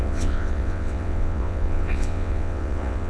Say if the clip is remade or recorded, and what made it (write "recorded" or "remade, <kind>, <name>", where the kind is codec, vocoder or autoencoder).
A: remade, vocoder, WaveNeXt